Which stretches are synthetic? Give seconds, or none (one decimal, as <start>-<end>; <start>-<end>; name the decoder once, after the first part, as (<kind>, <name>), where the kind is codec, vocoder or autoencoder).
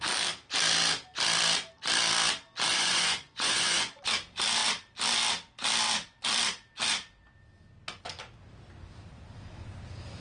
2.7-4.0 (vocoder, Vocos)